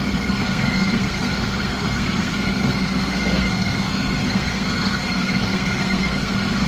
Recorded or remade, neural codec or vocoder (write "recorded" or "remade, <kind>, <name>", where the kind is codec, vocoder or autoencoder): remade, codec, SNAC